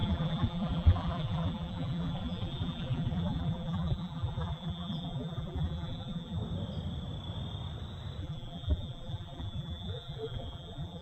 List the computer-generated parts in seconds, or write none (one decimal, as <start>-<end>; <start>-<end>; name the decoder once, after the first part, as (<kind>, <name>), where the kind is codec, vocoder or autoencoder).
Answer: 0.0-6.4 (vocoder, BigVGAN v2); 8.2-11.0